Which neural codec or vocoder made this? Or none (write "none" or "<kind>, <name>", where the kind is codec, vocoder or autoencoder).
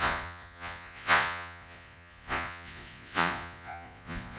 vocoder, Vocos